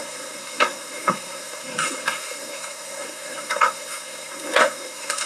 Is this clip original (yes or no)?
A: no